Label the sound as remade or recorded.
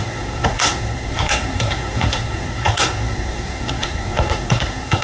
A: remade